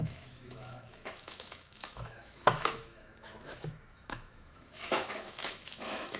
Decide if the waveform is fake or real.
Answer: fake